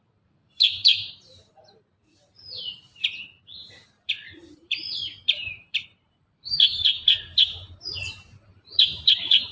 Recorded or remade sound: remade